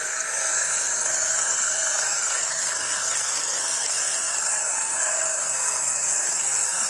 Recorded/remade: remade